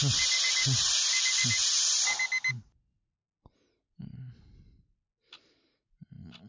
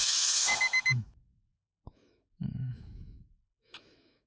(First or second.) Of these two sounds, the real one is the first